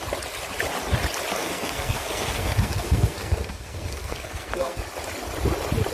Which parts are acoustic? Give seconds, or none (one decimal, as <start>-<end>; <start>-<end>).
0.0-1.3; 4.8-5.9